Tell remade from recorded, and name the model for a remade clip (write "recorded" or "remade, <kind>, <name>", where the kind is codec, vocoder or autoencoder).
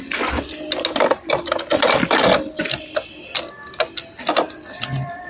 recorded